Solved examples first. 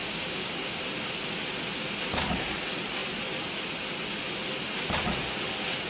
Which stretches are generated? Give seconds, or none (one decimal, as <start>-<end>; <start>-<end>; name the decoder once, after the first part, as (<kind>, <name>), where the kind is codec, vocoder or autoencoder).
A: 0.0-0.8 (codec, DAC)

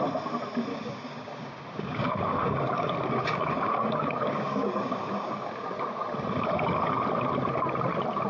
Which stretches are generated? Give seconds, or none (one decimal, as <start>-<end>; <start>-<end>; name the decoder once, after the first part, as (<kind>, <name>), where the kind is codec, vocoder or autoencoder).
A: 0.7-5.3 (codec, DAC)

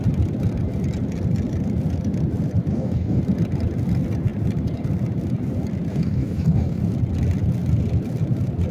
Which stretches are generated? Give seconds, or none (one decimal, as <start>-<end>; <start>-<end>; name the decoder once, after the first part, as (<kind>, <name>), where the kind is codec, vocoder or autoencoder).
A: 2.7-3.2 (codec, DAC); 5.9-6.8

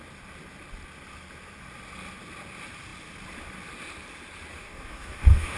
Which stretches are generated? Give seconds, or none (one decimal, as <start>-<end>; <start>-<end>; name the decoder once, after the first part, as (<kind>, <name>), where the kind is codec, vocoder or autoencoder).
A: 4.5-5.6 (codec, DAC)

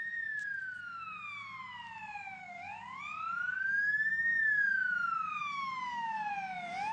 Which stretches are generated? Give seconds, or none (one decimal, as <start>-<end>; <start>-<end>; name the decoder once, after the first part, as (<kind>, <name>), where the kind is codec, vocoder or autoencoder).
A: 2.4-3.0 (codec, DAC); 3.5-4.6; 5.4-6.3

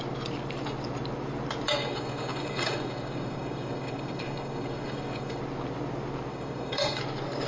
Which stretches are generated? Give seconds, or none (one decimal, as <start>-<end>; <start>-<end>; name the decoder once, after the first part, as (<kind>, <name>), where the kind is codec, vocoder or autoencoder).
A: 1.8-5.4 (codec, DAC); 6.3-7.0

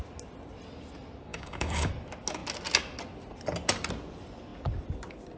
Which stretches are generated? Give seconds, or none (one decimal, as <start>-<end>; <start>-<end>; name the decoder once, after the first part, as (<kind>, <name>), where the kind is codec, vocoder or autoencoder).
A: 1.3-1.9 (codec, DAC)

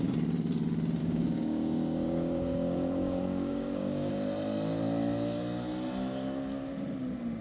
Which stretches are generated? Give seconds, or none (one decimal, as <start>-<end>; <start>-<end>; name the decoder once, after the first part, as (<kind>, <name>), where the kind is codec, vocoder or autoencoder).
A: 1.0-4.1 (codec, DAC)